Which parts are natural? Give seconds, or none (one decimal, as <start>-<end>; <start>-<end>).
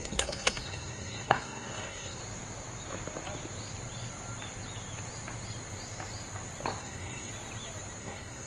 2.2-6.8; 7.3-8.0